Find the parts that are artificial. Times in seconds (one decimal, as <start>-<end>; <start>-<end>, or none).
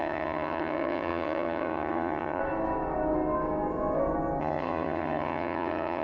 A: 0.0-2.4; 4.4-6.0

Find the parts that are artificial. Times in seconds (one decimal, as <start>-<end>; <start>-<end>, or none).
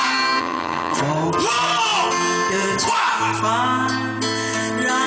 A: 0.4-1.0